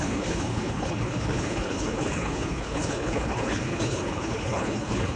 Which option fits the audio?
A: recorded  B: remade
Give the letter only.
B